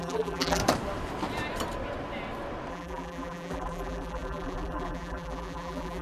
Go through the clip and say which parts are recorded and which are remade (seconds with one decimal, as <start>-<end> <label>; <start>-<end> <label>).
0.0-0.6 remade; 0.6-2.7 recorded; 2.7-6.0 remade